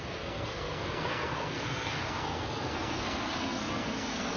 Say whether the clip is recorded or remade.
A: remade